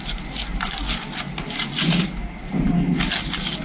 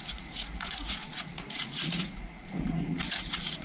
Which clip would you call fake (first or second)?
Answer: second